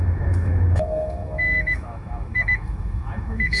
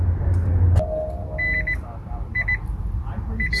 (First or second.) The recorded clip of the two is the second